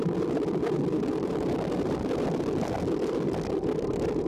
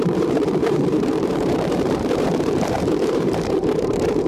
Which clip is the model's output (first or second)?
second